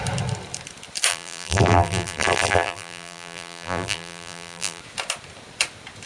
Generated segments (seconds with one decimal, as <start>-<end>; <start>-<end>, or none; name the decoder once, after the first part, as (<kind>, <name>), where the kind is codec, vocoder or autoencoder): 1.1-4.8 (vocoder, BigVGAN v2)